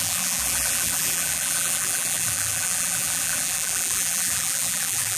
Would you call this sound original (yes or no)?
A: no